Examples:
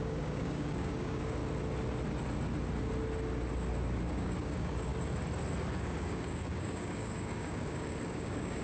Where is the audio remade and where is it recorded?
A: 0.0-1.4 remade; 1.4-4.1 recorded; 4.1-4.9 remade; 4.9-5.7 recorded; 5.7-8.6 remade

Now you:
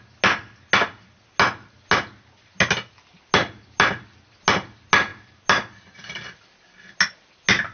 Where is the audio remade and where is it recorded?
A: 0.0-7.7 recorded

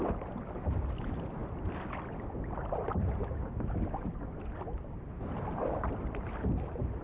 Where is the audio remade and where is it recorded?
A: 0.0-7.0 recorded

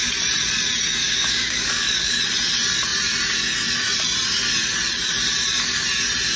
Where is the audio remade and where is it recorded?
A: 0.0-1.0 recorded; 1.0-2.2 remade; 2.2-6.4 recorded

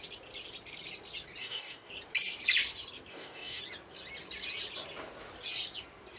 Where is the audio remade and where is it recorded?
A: 0.0-1.4 recorded; 1.4-1.9 remade; 1.9-3.1 recorded; 3.1-3.6 remade; 3.6-6.2 recorded

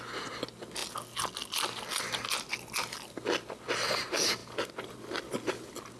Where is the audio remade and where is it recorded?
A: 0.0-6.0 recorded

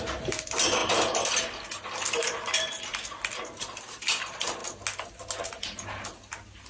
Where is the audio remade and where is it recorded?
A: 0.0-6.7 recorded